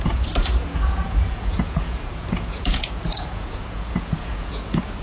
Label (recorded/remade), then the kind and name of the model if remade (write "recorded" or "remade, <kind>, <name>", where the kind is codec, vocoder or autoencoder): remade, vocoder, Vocos